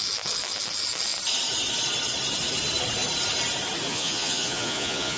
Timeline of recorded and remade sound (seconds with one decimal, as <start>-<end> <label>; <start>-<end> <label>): 0.0-3.9 recorded; 3.9-5.2 remade